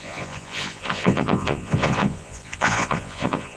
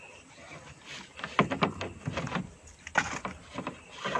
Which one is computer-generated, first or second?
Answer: first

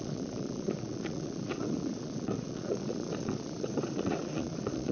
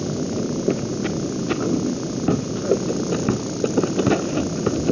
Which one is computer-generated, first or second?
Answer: first